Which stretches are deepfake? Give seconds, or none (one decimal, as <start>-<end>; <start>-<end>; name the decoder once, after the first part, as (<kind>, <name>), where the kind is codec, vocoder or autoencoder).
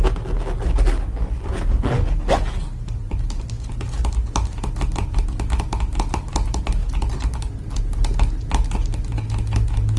none